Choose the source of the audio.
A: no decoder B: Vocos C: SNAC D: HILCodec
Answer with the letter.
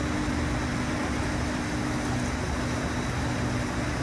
A